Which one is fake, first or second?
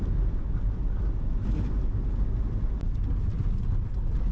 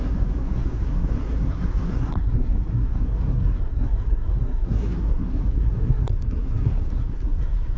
second